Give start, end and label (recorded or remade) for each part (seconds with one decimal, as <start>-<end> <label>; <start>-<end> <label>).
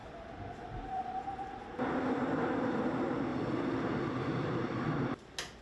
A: 0.0-2.8 remade; 2.8-3.3 recorded; 3.3-4.5 remade; 4.5-5.6 recorded